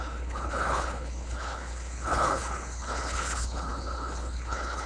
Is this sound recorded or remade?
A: remade